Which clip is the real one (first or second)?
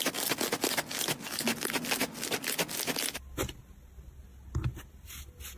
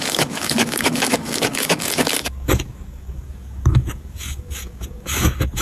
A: first